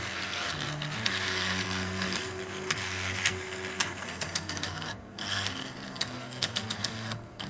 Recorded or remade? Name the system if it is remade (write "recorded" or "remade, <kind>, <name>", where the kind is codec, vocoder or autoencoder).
remade, codec, SNAC